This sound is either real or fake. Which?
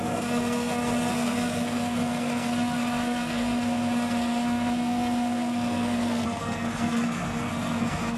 fake